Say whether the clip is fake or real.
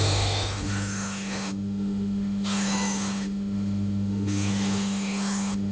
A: fake